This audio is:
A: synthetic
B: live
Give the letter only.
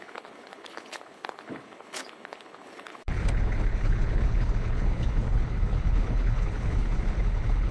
A